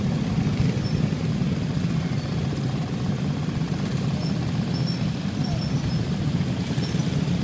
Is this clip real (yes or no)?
yes